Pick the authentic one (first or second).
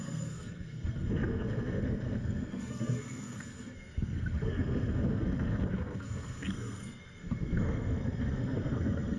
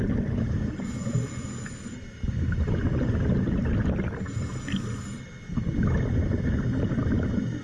second